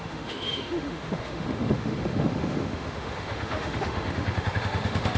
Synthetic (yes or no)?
yes